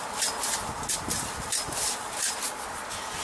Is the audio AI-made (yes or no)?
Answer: no